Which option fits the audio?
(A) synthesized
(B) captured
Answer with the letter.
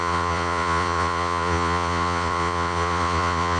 A